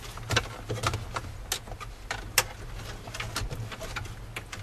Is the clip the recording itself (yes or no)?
yes